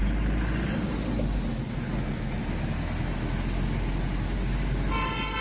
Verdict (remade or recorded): recorded